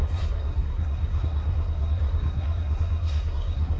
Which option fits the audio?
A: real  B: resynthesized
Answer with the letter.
B